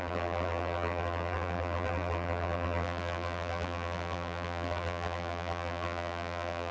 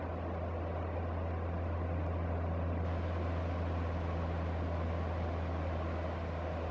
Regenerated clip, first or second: first